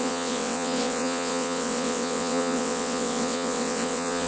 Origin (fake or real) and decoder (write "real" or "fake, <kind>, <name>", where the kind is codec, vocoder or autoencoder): fake, vocoder, WaveNeXt